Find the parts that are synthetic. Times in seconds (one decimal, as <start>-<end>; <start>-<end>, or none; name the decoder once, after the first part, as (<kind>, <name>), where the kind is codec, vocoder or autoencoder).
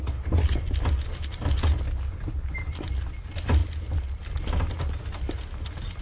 none